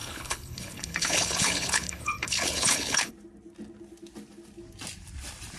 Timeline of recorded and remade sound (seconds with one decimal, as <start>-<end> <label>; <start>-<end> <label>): 0.0-3.1 remade; 3.1-5.6 recorded

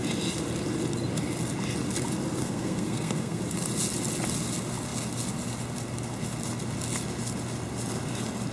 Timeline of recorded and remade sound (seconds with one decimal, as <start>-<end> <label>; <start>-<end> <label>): 0.0-2.4 recorded; 2.4-3.4 remade; 3.4-8.5 recorded